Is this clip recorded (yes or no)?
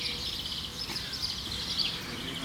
yes